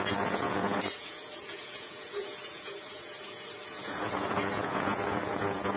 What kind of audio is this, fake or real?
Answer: fake